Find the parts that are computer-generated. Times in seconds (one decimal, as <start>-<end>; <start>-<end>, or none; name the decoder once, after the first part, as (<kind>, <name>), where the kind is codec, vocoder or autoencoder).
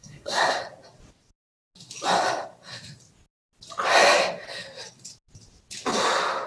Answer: 0.0-0.6 (codec, SNAC)